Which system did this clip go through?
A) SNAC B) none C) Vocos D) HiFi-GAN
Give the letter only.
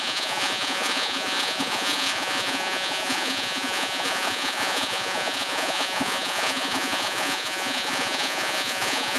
C